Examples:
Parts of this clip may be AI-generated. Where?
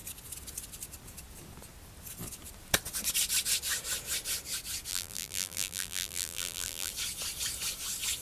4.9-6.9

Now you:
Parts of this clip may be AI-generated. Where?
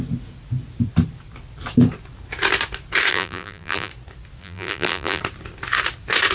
3.1-3.9; 4.4-5.2